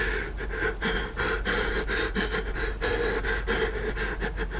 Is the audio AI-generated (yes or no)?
no